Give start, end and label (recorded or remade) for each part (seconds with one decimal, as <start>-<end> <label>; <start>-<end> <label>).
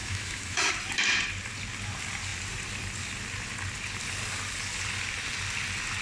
0.0-0.7 remade; 0.7-6.0 recorded